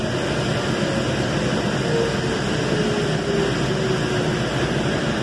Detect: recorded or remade recorded